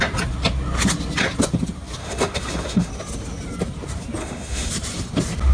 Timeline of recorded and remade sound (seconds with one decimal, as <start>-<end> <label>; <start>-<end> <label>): 0.0-2.0 recorded; 2.0-2.9 remade; 2.9-4.2 recorded; 4.2-4.7 remade; 4.7-5.5 recorded